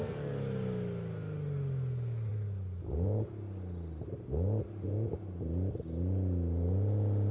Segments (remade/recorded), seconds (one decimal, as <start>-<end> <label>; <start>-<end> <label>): 0.0-7.3 recorded